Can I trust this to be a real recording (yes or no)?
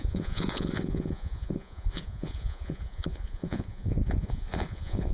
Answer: no